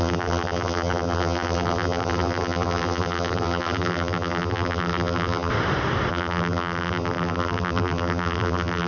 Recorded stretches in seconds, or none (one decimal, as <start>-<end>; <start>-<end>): 5.5-6.1